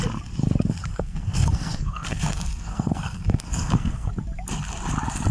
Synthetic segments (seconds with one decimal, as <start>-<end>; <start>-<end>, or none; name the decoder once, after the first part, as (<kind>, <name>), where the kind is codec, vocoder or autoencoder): 0.9-4.1 (codec, SNAC)